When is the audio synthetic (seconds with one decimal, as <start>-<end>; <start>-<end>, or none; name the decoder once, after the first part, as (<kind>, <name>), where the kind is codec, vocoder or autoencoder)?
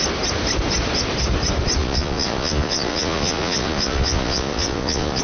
1.8-5.2 (vocoder, Vocos)